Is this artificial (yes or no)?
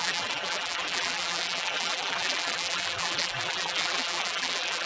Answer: yes